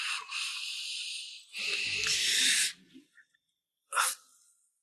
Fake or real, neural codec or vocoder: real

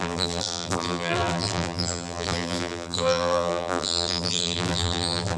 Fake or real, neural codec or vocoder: fake, vocoder, BigVGAN v2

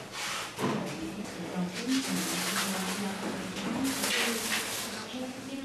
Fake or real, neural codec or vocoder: real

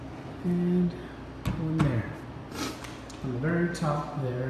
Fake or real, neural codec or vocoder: real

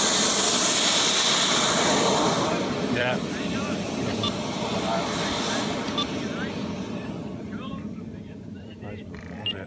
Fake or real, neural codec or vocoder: fake, vocoder, BigVGAN v2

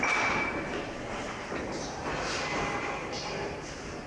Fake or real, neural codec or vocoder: real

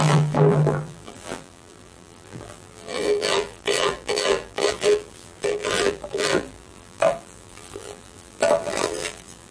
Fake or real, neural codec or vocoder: fake, vocoder, BigVGAN v2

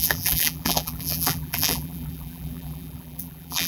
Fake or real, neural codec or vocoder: fake, vocoder, BigVGAN v2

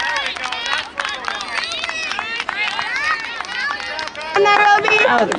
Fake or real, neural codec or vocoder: real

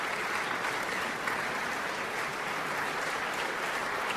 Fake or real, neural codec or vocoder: real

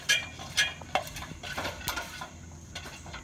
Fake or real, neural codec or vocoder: real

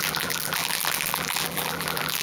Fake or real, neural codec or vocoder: fake, vocoder, BigVGAN v2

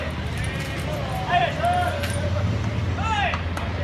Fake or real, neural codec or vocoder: real